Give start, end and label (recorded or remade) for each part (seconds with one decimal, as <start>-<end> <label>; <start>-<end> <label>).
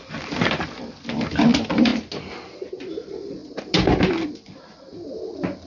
0.0-1.9 remade; 1.9-2.9 recorded; 2.9-3.4 remade; 3.4-4.1 recorded; 4.1-4.9 remade; 4.9-5.7 recorded